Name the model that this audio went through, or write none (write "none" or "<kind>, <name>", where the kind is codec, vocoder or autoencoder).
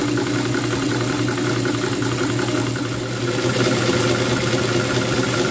none